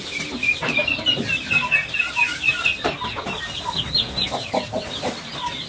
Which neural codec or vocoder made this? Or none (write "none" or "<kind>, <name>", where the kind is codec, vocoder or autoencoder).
none